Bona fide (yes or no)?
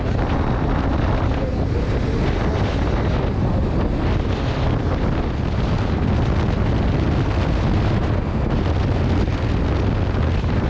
yes